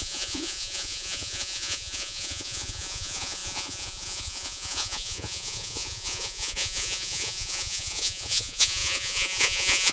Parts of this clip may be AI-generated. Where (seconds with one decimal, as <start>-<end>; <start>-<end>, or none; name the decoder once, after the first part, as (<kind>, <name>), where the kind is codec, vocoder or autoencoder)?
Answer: 0.0-9.9 (vocoder, Vocos)